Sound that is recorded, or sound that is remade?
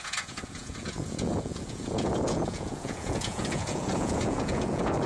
remade